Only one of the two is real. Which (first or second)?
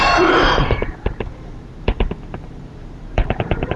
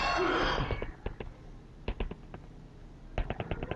second